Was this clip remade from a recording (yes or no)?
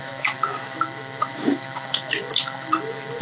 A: yes